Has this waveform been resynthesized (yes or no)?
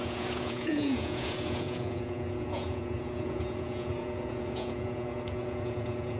yes